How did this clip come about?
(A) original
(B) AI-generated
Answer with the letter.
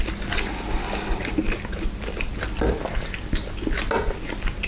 A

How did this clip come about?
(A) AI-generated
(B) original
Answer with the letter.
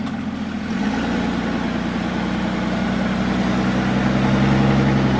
B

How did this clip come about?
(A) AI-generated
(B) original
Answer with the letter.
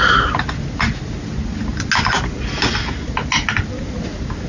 B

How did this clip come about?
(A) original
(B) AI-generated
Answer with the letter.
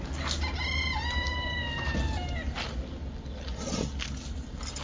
A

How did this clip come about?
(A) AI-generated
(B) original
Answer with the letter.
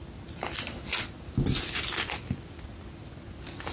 B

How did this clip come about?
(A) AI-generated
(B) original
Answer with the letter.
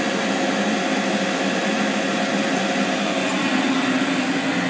B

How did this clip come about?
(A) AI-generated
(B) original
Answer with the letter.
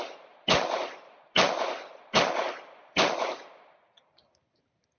B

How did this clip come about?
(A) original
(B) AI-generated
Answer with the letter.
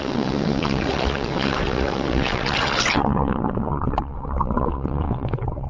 B